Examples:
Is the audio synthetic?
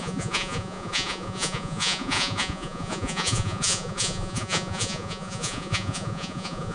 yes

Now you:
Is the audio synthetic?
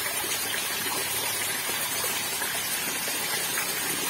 yes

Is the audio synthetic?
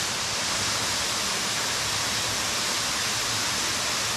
no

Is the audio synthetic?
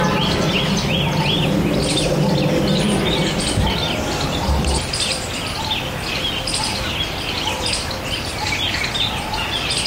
no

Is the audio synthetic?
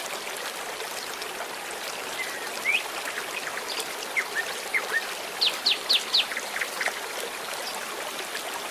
no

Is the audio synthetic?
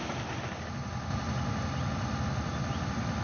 no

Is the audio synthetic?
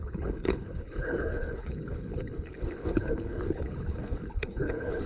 yes